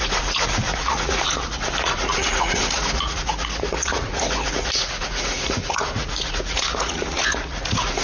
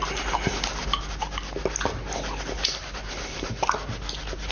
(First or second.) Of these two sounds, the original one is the second